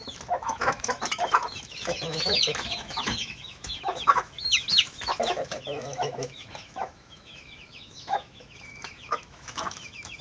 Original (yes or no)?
no